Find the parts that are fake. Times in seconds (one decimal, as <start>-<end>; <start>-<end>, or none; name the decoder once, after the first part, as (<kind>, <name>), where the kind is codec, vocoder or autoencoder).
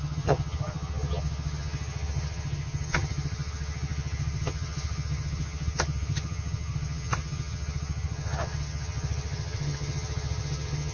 0.0-10.9 (vocoder, HiFi-GAN)